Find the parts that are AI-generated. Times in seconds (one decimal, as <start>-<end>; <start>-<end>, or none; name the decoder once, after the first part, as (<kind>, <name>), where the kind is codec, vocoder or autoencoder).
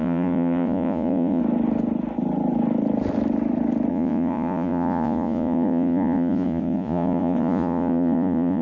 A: 0.0-1.4 (vocoder, Vocos); 3.9-8.6